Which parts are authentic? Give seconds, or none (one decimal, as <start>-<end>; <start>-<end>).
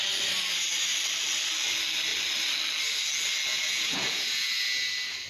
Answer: 0.0-3.5; 4.5-5.3